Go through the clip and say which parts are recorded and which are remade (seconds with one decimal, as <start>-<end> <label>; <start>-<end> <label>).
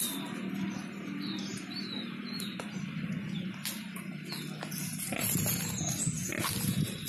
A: 0.0-1.5 recorded; 1.5-2.5 remade; 2.5-4.8 recorded; 4.8-5.8 remade; 5.8-7.1 recorded